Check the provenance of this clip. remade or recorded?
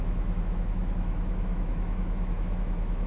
remade